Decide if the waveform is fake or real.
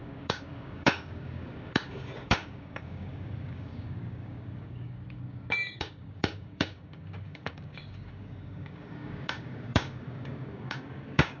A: fake